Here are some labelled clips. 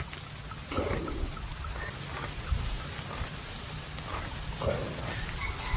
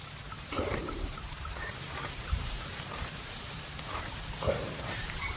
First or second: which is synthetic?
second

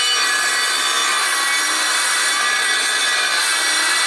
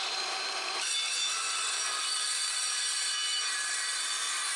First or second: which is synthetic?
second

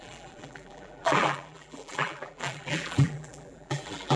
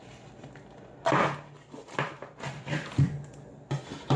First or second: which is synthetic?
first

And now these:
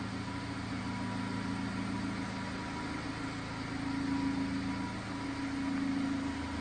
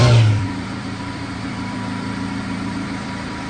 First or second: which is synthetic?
second